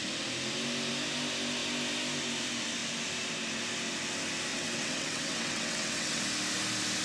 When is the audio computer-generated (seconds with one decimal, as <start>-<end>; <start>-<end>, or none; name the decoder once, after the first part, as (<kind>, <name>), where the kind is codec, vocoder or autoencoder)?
4.5-6.2 (vocoder, WaveNeXt)